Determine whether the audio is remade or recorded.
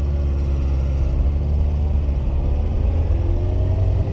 recorded